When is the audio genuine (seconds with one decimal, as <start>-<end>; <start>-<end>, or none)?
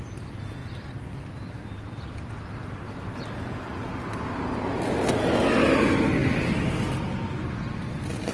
0.0-8.3